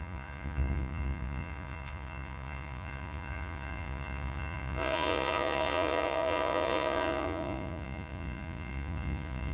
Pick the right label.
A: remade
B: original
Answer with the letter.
A